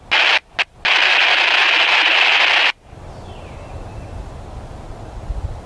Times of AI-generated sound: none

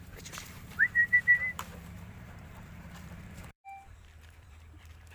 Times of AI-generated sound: 0.0-5.1 (vocoder, BigVGAN v2)

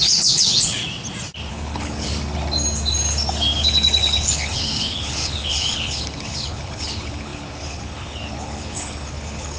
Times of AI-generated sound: 0.0-0.8 (codec, HILCodec); 1.5-2.1; 3.6-9.6

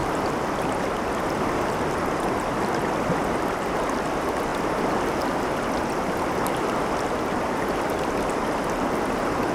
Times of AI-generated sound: none

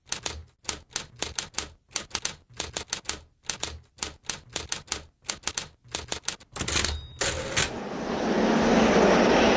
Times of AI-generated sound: none

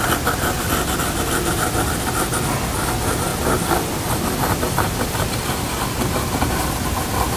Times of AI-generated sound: none

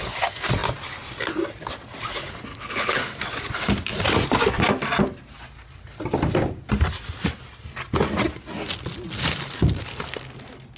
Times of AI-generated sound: 2.5-3.0 (codec, HILCodec)